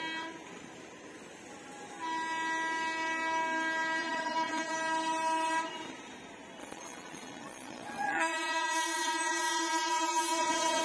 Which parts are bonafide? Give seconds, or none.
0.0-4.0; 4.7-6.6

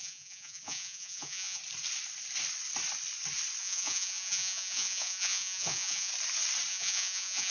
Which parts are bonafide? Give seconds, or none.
1.6-3.6; 6.1-6.7

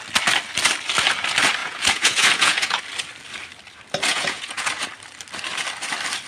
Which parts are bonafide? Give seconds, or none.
0.0-1.6; 2.8-4.1; 4.7-6.3

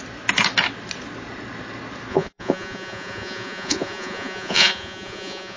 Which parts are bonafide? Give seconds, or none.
0.0-2.1

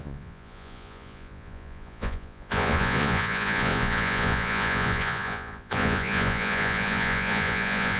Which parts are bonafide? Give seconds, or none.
none

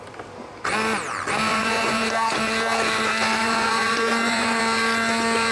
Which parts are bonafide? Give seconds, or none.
0.0-1.5; 2.1-3.4; 4.6-5.5

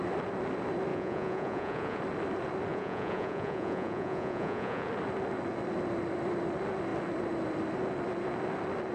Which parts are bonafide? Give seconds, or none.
0.0-0.9; 2.0-2.7; 4.9-8.9

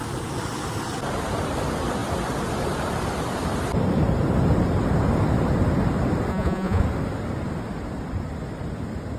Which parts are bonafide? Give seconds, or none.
0.0-6.3; 6.8-9.2